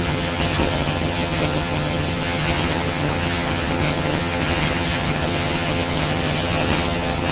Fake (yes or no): yes